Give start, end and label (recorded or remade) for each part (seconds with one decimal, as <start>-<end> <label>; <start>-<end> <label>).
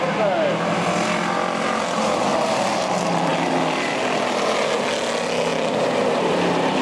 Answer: 0.0-6.8 recorded